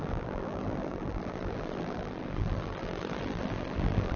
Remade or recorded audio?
remade